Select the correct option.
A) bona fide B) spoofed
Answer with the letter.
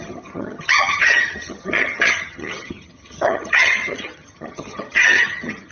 B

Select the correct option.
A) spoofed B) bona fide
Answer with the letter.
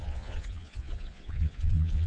A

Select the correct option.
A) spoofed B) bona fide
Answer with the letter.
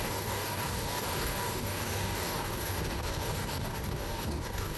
A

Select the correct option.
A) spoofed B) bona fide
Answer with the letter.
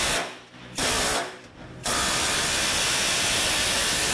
A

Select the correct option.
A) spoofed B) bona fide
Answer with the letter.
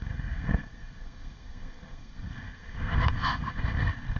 A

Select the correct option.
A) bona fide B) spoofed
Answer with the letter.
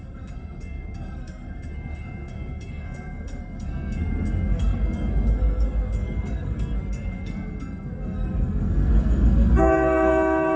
B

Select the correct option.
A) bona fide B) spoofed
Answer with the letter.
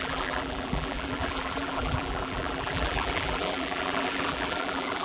B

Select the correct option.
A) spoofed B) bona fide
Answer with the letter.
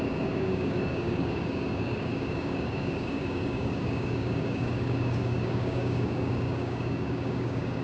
A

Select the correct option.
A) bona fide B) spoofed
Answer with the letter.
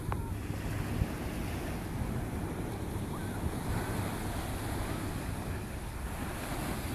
A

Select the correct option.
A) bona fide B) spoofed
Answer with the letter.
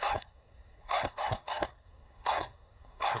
B